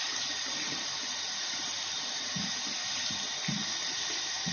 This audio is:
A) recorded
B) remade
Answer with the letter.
A